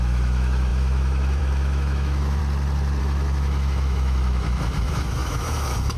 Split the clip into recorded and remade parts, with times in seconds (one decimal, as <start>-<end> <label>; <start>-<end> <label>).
0.0-2.4 remade; 2.4-3.0 recorded; 3.0-6.0 remade